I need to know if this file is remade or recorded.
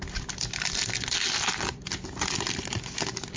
recorded